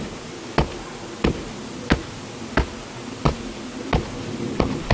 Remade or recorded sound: recorded